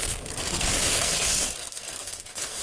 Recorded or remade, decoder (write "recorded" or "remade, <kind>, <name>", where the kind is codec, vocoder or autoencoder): remade, codec, SNAC